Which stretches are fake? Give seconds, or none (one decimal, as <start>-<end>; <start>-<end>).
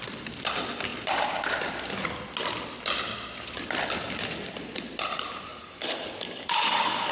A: 5.5-7.1